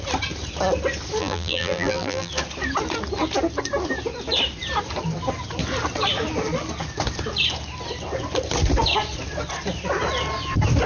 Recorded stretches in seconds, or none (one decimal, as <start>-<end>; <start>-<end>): 0.0-1.2; 2.3-10.9